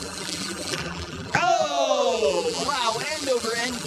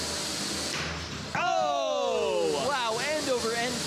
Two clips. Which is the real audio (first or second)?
second